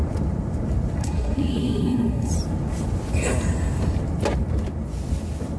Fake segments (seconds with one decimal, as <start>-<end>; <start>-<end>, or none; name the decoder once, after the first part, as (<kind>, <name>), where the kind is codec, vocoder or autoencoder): 1.0-2.3 (codec, SNAC)